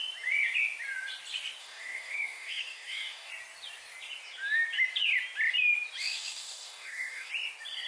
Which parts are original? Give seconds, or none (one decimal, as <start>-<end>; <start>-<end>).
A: 0.0-1.6; 3.3-6.0; 7.3-7.9